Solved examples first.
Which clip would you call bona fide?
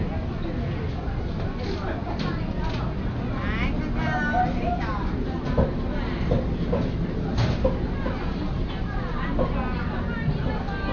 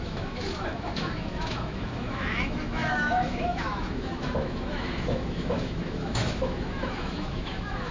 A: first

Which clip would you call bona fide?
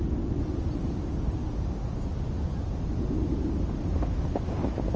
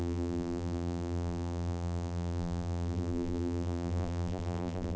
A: first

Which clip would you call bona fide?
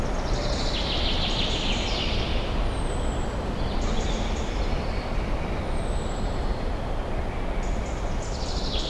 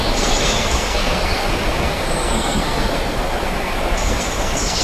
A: first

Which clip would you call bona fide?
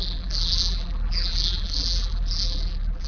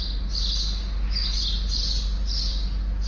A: second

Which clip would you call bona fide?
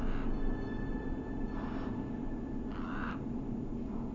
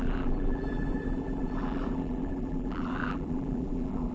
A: first